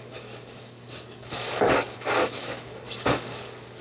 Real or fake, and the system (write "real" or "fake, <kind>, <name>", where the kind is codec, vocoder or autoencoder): fake, codec, DAC